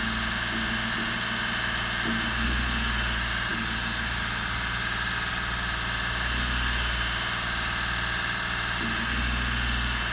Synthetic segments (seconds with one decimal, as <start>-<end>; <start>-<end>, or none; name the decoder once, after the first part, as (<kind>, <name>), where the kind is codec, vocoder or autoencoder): none